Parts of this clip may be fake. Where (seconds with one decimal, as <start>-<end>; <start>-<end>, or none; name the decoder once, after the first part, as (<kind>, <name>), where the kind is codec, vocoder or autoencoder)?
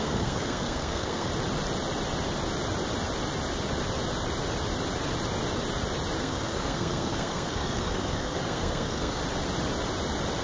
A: 0.0-1.3 (codec, SNAC); 6.2-9.2